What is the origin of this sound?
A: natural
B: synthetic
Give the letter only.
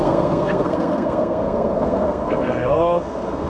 B